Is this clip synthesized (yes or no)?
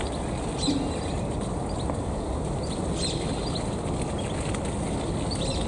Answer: no